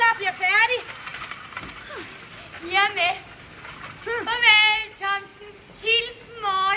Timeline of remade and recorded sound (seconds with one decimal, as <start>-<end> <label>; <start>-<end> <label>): 0.0-5.3 recorded; 5.3-6.2 remade; 6.2-6.8 recorded